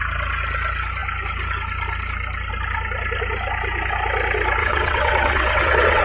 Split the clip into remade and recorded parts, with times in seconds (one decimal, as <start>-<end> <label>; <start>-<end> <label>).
0.0-4.6 recorded; 4.6-6.0 remade